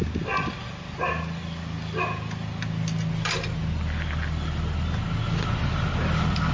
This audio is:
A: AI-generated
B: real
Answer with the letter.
B